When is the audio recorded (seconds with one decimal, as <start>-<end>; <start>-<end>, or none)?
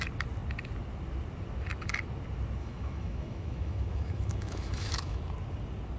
0.0-2.6; 5.2-6.0